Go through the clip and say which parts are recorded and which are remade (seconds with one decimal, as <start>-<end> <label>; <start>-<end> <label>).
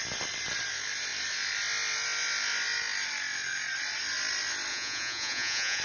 0.0-4.7 recorded; 4.7-5.8 remade